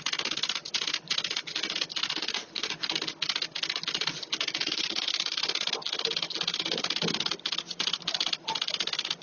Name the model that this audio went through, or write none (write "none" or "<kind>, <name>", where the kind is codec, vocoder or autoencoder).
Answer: none